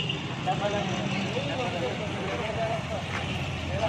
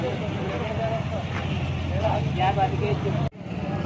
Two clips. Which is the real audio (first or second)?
second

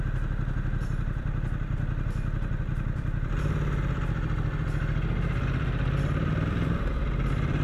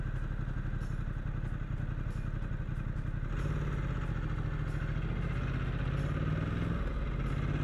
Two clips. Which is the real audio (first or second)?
second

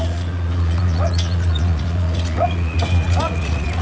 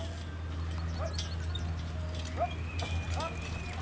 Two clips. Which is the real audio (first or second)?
second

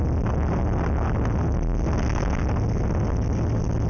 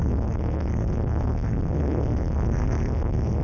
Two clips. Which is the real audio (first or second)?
first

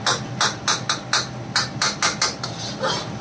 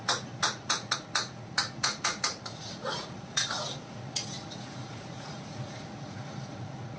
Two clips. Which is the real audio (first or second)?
first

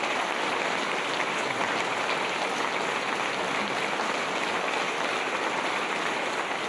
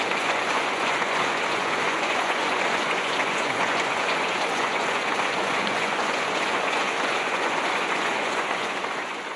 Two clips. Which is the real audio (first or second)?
first